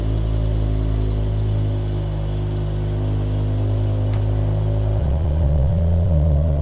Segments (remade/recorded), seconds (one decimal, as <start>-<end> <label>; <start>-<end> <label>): 0.0-5.0 recorded; 5.0-6.6 remade